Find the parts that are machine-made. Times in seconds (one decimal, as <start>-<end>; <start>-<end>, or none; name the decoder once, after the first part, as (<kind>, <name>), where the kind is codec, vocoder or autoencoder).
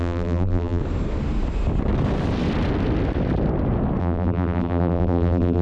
0.0-0.8 (vocoder, BigVGAN v2); 4.0-5.6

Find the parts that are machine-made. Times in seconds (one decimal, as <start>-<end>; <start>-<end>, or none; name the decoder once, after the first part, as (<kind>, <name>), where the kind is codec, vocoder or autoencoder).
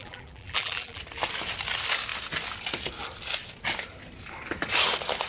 0.0-1.0 (vocoder, BigVGAN v2)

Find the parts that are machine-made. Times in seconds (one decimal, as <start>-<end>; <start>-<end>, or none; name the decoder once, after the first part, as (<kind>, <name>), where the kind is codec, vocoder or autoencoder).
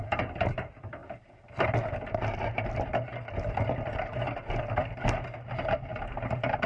0.0-1.0 (vocoder, BigVGAN v2); 5.0-6.7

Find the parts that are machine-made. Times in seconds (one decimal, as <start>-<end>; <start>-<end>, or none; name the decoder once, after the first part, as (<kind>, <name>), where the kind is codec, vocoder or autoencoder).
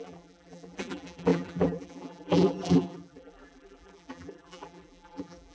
0.0-5.5 (vocoder, BigVGAN v2)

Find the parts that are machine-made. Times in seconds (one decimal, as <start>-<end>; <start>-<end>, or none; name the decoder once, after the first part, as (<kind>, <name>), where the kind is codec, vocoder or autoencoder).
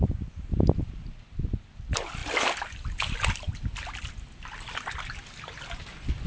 2.2-4.1 (vocoder, BigVGAN v2)